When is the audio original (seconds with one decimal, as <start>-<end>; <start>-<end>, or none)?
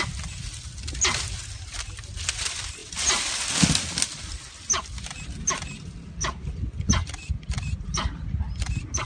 0.0-9.1